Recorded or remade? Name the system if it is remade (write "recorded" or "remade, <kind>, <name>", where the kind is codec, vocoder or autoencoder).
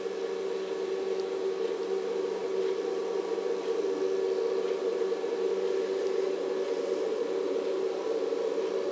recorded